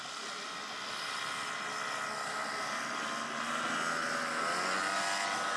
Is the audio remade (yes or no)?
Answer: no